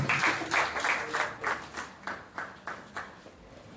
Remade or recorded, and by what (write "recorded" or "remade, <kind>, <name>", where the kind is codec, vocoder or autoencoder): recorded